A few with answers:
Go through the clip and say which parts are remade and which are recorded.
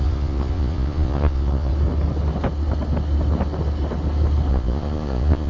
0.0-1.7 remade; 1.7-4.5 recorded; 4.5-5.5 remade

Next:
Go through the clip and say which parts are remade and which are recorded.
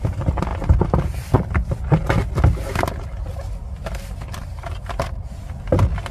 0.0-6.1 recorded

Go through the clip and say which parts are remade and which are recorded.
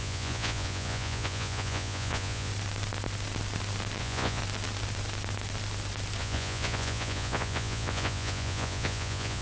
0.0-2.5 remade; 2.5-4.0 recorded; 4.0-4.4 remade; 4.4-6.2 recorded; 6.2-9.4 remade